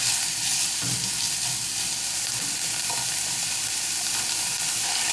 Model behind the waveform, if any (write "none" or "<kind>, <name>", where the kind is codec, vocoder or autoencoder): none